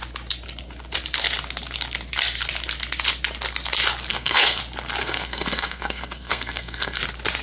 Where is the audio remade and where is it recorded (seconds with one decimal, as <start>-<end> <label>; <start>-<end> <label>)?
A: 0.0-4.1 recorded; 4.1-4.6 remade; 4.6-5.0 recorded; 5.0-7.0 remade; 7.0-7.4 recorded